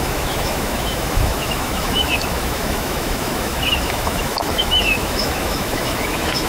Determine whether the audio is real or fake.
fake